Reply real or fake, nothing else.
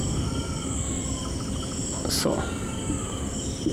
real